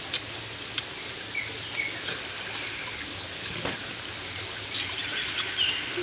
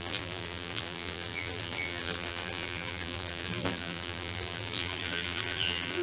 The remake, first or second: second